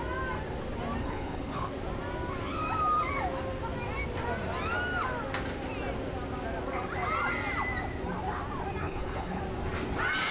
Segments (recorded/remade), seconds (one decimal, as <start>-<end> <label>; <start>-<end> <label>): 0.0-1.0 recorded; 1.0-1.7 remade; 1.7-8.8 recorded; 8.8-9.4 remade; 9.4-10.3 recorded